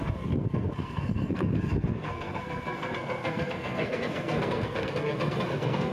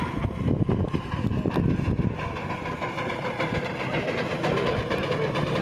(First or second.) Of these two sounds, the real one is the second